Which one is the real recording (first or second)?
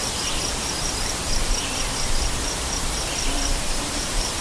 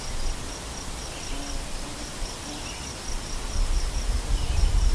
second